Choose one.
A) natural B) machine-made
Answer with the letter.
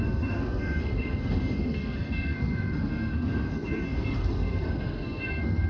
B